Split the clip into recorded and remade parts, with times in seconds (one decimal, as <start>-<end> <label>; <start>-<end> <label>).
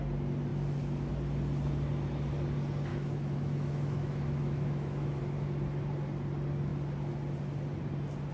0.0-2.9 recorded; 2.9-5.2 remade; 5.2-8.3 recorded